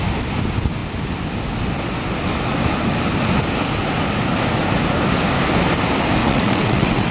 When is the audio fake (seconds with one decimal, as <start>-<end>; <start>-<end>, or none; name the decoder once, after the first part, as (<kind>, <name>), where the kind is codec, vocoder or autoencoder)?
6.2-7.1 (vocoder, WaveNeXt)